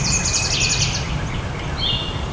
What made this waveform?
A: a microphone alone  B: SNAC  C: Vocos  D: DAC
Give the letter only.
A